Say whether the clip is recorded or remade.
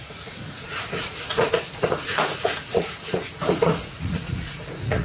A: remade